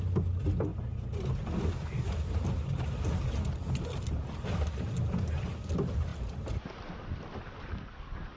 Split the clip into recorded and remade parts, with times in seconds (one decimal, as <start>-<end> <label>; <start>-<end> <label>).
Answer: 0.0-8.4 recorded